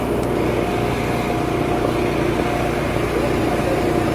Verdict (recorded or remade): recorded